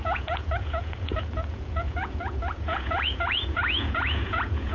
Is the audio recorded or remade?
remade